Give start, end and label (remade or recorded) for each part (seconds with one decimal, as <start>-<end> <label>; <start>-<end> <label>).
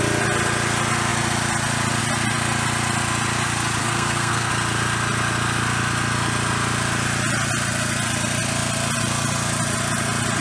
0.0-3.8 recorded; 3.8-4.5 remade; 4.5-10.4 recorded